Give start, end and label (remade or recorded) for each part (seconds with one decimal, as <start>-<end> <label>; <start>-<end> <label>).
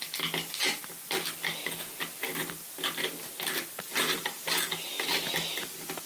0.0-6.1 recorded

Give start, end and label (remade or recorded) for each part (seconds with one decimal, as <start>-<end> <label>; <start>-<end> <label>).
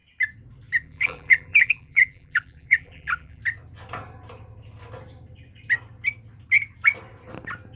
0.0-0.8 recorded; 0.8-3.4 remade; 3.4-7.8 recorded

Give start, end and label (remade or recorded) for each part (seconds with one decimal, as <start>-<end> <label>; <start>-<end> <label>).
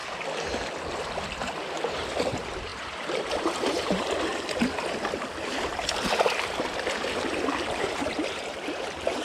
0.0-2.3 recorded; 2.3-4.3 remade; 4.3-5.7 recorded; 5.7-9.2 remade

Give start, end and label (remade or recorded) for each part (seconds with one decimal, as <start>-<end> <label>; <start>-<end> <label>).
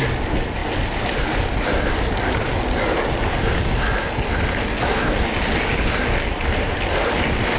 0.0-7.6 recorded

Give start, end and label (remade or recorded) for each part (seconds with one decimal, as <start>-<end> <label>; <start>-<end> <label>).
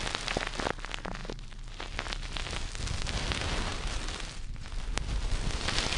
0.0-3.7 recorded; 3.7-5.5 remade; 5.5-6.0 recorded